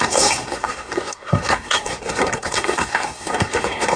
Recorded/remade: remade